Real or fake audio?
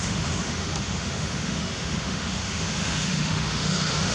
fake